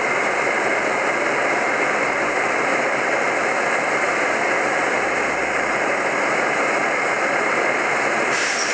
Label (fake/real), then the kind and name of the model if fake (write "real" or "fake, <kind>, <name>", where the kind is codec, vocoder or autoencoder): real